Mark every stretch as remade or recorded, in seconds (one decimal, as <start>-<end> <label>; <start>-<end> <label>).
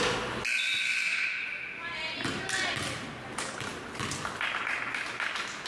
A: 0.0-5.7 recorded